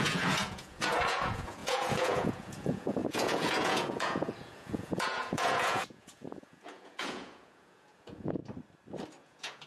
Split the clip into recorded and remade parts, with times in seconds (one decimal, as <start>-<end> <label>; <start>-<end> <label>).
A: 0.0-8.4 remade; 8.4-9.2 recorded; 9.2-9.7 remade